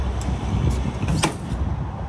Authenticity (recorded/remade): recorded